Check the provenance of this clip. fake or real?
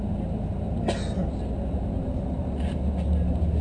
real